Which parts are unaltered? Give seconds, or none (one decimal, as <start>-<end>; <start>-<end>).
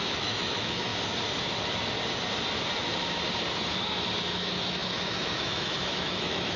0.9-4.2